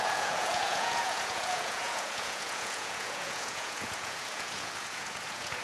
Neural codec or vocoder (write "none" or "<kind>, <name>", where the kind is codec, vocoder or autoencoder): vocoder, Vocos